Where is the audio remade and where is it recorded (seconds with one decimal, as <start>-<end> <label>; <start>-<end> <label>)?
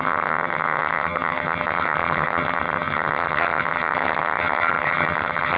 0.0-5.6 remade